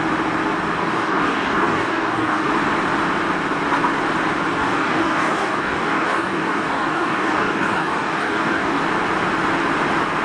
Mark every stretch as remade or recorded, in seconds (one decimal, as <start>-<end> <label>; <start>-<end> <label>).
0.0-0.8 recorded; 0.8-2.5 remade; 2.5-4.6 recorded; 4.6-8.8 remade; 8.8-10.2 recorded